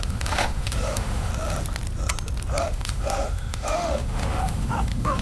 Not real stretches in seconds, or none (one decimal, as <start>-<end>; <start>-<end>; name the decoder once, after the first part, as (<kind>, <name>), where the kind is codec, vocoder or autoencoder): 0.0-1.3 (autoencoder, DAC-VAE); 2.6-5.2